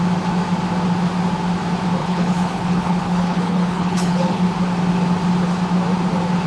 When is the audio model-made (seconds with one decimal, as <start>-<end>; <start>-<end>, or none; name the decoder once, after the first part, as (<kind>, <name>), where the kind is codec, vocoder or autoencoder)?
2.0-4.4 (codec, HILCodec)